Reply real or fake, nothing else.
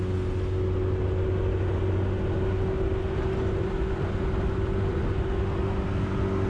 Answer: real